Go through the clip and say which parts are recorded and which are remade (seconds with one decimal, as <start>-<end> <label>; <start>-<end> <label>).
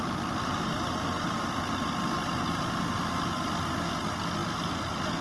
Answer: 0.0-5.2 recorded